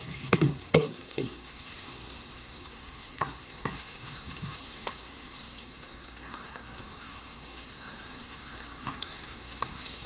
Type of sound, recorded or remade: remade